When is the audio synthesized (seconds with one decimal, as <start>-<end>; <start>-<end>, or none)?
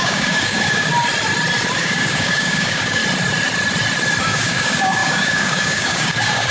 0.0-0.9; 1.8-3.0; 4.2-6.5